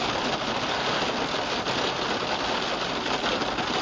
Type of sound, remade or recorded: recorded